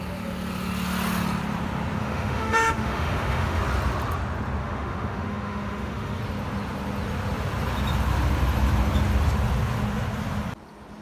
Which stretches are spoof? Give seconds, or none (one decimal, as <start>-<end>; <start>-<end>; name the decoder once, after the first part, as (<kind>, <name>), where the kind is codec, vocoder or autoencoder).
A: 2.0-3.6 (autoencoder, DAC-VAE); 4.6-6.2